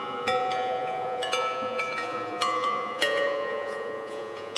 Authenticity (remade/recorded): remade